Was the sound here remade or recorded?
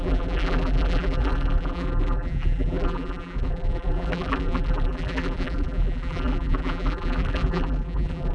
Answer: remade